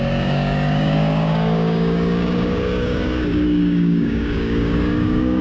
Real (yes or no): no